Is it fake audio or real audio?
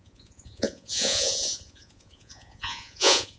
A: fake